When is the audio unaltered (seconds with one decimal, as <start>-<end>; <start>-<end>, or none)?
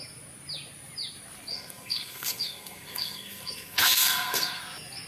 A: 0.0-1.5; 4.6-5.1